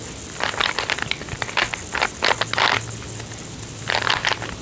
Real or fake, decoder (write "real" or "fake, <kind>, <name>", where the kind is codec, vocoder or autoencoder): real